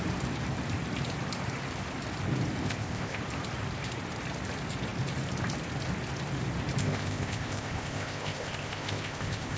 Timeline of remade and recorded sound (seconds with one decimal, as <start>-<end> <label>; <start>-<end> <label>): 0.0-2.6 recorded; 2.6-3.2 remade; 3.2-6.8 recorded; 6.8-9.6 remade